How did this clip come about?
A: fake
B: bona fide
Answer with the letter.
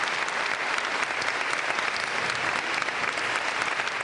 B